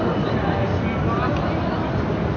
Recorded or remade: recorded